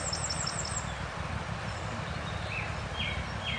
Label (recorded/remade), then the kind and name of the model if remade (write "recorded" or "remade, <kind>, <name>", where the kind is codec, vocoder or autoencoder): recorded